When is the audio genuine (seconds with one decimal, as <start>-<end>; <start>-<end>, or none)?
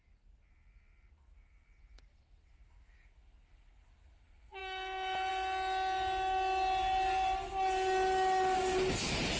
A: 0.0-9.4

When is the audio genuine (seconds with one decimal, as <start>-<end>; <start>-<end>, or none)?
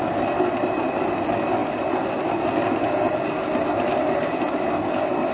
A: 0.0-5.3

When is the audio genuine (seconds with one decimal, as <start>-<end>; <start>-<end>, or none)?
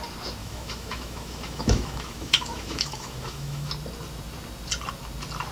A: 0.0-0.4; 3.7-5.5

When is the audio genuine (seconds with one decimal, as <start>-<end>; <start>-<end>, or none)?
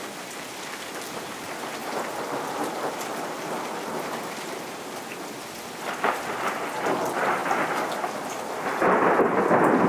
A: 0.0-9.9